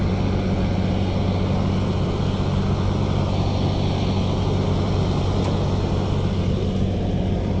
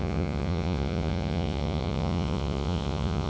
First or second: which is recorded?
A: first